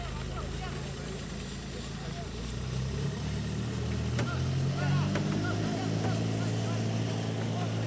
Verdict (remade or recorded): recorded